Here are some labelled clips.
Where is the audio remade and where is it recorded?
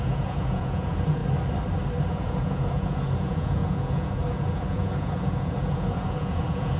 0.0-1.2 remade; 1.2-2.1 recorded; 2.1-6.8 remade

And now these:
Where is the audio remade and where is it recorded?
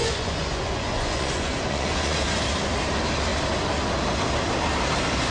0.0-2.4 remade; 2.4-5.3 recorded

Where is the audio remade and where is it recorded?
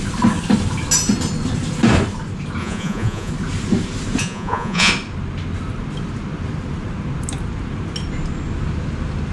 0.0-2.6 recorded; 2.6-3.3 remade; 3.3-4.2 recorded; 4.2-4.9 remade; 4.9-9.3 recorded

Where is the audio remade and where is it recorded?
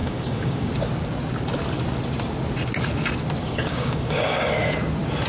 0.0-0.7 remade; 0.7-3.4 recorded; 3.4-4.7 remade; 4.7-5.3 recorded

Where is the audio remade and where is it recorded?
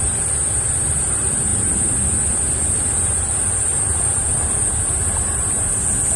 0.0-6.2 recorded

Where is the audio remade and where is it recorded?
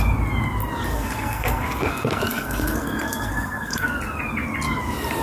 0.0-0.9 recorded; 0.9-4.0 remade; 4.0-5.2 recorded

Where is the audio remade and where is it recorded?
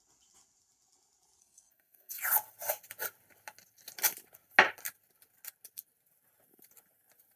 0.0-1.4 recorded; 1.4-2.2 remade; 2.2-7.4 recorded